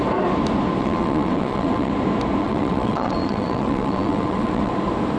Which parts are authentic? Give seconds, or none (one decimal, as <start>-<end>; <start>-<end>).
0.0-0.8; 1.9-2.4; 4.7-5.2